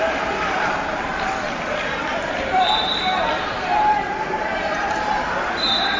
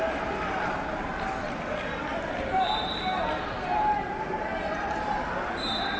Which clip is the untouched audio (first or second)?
second